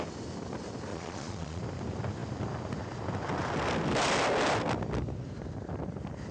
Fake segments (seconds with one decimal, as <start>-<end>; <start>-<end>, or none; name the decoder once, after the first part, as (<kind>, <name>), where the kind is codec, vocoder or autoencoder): 0.9-1.6 (vocoder, Vocos)